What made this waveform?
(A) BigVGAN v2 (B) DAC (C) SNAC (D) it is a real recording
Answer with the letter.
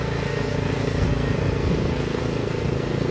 C